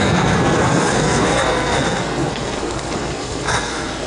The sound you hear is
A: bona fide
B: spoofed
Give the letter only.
B